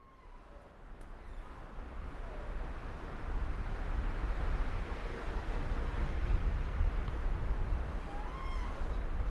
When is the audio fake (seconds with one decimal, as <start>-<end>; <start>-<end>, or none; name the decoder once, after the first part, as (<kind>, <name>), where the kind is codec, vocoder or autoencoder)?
4.7-6.9 (codec, SNAC)